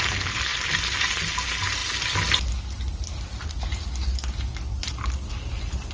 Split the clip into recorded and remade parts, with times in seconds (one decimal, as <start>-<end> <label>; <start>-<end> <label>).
0.0-0.5 recorded; 0.5-1.0 remade; 1.0-5.9 recorded